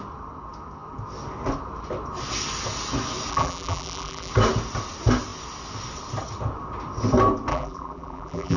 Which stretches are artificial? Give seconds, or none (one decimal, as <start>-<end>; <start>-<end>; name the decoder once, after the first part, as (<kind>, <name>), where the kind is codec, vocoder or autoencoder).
3.3-4.3 (vocoder, BigVGAN v2); 7.5-8.6